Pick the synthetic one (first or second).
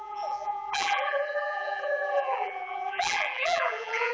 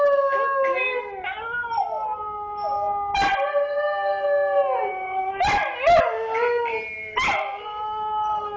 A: first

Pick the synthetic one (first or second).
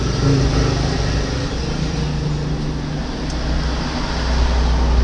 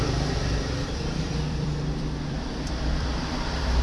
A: second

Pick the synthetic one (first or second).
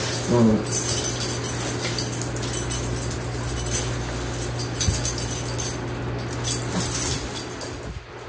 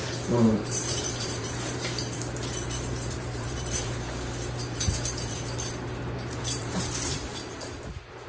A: second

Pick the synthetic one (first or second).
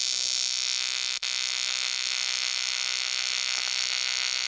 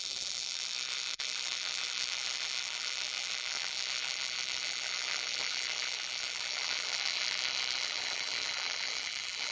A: second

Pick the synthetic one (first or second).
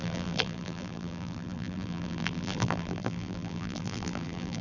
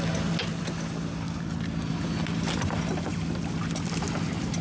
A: first